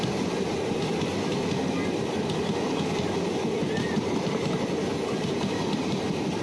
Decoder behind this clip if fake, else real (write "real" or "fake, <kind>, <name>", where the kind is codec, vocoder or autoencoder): real